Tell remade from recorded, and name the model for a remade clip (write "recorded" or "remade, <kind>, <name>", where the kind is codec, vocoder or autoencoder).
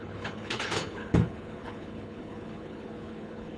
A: remade, codec, HILCodec